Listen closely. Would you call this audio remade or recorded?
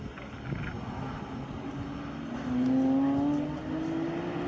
recorded